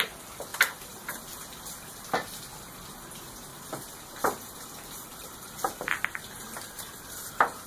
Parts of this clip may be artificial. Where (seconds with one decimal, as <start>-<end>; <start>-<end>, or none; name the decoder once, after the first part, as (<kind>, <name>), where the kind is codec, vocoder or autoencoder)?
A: 0.5-1.3 (vocoder, BigVGAN v2); 3.5-4.4; 5.1-6.0